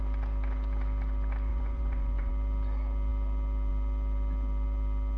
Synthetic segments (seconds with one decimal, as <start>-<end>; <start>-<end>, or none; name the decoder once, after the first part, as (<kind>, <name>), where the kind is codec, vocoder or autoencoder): 1.5-2.3 (vocoder, Vocos)